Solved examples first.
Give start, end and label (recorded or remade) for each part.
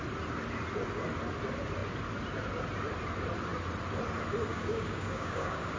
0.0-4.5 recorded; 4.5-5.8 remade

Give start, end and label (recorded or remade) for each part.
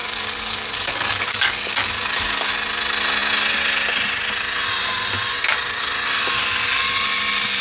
0.0-2.5 remade; 2.5-7.6 recorded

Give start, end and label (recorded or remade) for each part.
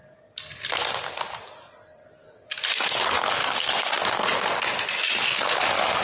0.0-3.4 recorded; 3.4-4.0 remade; 4.0-6.0 recorded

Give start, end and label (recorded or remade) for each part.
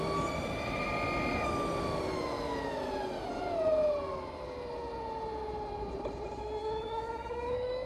0.0-6.6 recorded; 6.6-7.9 remade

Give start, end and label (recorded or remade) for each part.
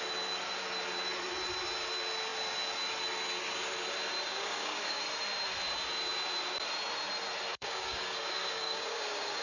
0.0-4.3 recorded; 4.3-5.0 remade; 5.0-7.5 recorded; 7.5-9.4 remade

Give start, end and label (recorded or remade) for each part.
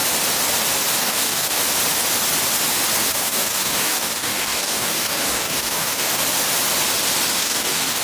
0.0-1.0 recorded; 1.0-1.6 remade; 1.6-3.1 recorded; 3.1-6.2 remade; 6.2-7.4 recorded; 7.4-8.0 remade